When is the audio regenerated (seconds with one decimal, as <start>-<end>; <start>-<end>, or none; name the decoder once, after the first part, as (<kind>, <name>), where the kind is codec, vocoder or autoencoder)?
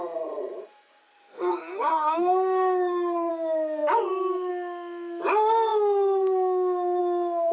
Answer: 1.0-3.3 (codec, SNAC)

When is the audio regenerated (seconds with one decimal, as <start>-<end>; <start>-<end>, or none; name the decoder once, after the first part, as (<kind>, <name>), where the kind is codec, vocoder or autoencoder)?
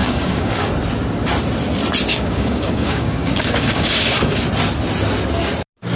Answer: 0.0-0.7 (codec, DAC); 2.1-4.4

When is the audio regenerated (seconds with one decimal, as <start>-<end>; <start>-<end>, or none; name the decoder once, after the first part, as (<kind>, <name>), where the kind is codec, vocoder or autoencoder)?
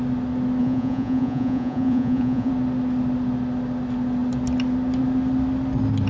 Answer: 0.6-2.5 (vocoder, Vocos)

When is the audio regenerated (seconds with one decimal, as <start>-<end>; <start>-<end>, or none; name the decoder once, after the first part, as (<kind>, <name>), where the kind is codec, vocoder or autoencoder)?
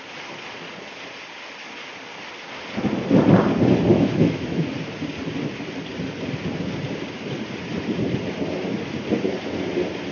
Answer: 3.9-4.7 (autoencoder, DAC-VAE)